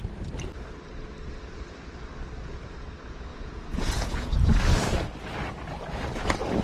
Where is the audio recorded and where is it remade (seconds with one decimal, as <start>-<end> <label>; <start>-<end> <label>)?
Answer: 0.0-3.3 recorded; 3.3-4.6 remade; 4.6-6.6 recorded